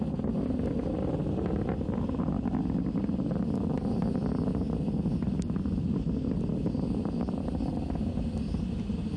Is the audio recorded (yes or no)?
yes